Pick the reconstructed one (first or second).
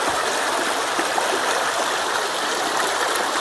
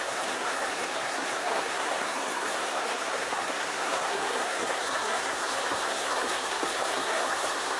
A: second